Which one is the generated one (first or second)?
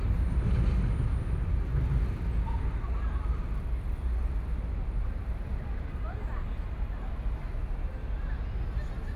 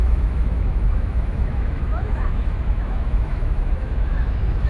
second